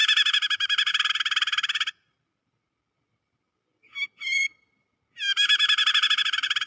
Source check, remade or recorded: recorded